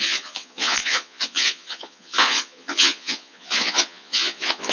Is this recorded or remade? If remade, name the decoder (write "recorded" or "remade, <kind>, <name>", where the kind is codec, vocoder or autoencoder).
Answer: remade, vocoder, Vocos